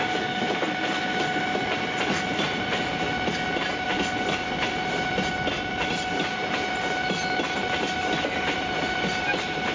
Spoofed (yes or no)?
no